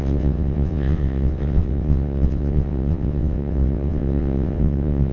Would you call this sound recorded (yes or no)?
no